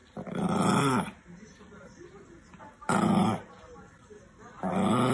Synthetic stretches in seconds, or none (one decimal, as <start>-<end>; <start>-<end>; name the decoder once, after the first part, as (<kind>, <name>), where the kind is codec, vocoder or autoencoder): none